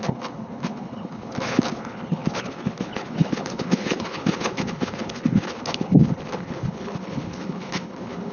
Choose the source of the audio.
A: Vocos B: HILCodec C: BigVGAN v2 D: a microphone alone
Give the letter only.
B